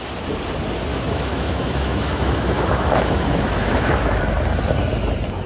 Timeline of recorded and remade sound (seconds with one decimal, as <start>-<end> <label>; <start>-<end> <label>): 0.0-0.9 recorded; 0.9-4.2 remade; 4.2-5.5 recorded